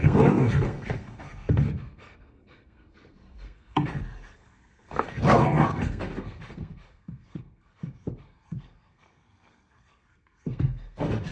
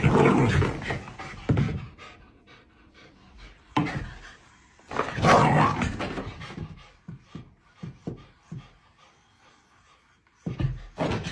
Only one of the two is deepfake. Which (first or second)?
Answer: first